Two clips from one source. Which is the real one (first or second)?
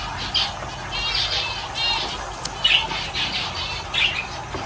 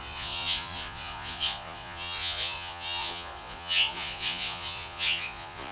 first